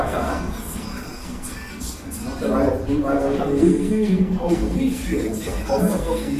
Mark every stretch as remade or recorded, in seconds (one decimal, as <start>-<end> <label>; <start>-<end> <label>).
0.0-2.2 remade; 2.2-3.0 recorded; 3.0-6.4 remade